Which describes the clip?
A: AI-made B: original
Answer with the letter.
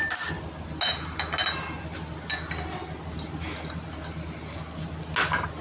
B